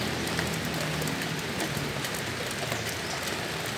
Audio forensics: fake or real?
real